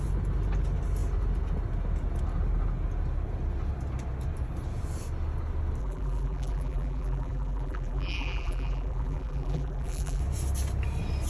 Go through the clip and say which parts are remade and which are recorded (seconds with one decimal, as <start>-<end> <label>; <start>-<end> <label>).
0.0-5.8 recorded; 5.8-10.2 remade; 10.2-11.3 recorded